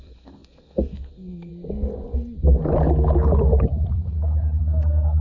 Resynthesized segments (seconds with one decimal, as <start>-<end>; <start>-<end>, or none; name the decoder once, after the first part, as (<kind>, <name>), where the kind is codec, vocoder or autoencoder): 0.0-1.5 (codec, SNAC); 4.6-5.2